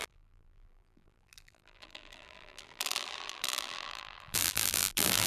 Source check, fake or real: fake